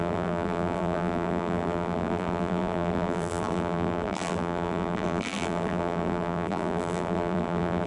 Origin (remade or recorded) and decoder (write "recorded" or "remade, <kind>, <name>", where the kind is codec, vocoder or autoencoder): remade, vocoder, BigVGAN v2